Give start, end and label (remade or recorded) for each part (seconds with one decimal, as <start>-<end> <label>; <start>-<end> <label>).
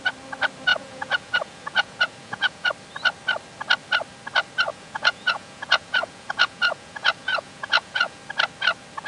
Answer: 0.0-0.7 recorded; 0.7-2.7 remade; 2.7-4.7 recorded; 4.7-8.2 remade; 8.2-9.1 recorded